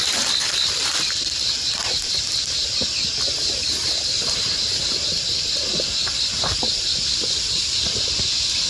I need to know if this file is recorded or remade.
recorded